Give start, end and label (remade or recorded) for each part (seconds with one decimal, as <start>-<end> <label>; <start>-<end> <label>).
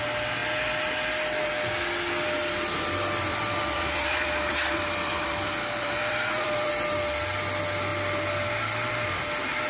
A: 0.0-3.3 recorded; 3.3-6.7 remade; 6.7-9.7 recorded